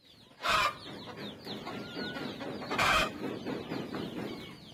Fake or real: real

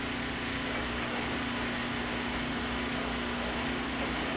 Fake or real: real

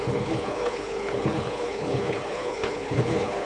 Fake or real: fake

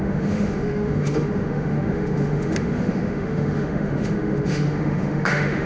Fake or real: fake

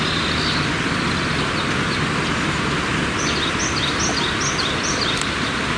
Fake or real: real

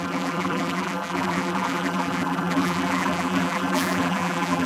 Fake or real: fake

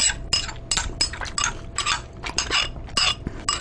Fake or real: real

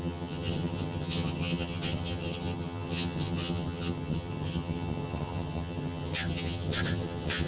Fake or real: fake